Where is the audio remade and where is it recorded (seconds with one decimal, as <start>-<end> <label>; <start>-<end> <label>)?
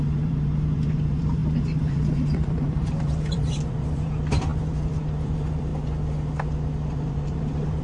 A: 0.0-5.7 remade; 5.7-6.9 recorded; 6.9-7.8 remade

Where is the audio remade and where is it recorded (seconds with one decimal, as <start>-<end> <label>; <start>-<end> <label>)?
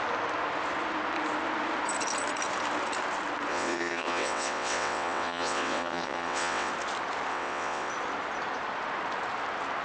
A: 0.0-3.5 recorded; 3.5-6.7 remade; 6.7-7.3 recorded; 7.3-7.9 remade; 7.9-9.8 recorded